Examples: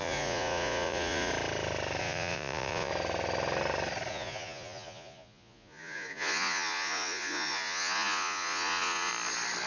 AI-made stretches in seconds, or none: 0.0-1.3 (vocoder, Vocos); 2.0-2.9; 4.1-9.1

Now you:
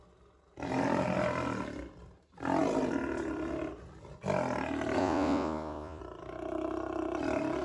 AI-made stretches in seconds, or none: 5.0-6.0 (vocoder, Vocos)

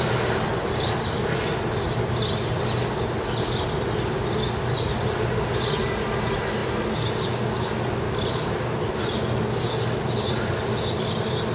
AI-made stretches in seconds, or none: none

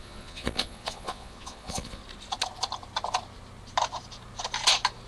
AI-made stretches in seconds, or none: 0.0-2.0 (vocoder, Vocos)

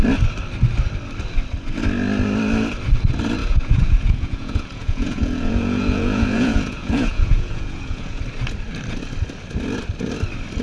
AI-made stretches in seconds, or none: 3.4-8.2 (vocoder, Vocos)

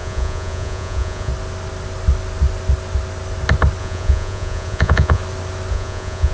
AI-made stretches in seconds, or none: 0.0-1.3 (vocoder, Vocos); 3.8-5.2; 5.7-6.3

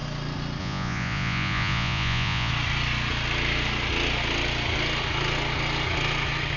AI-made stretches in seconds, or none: 0.6-2.5 (vocoder, Vocos)

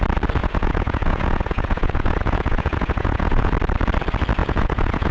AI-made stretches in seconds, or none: 0.4-3.5 (vocoder, Vocos); 4.4-5.1